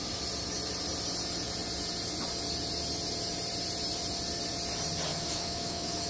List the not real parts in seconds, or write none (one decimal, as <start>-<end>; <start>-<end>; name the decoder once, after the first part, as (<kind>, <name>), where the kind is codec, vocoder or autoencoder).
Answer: 5.1-6.1 (autoencoder, DAC-VAE)